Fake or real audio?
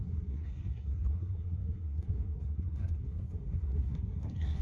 fake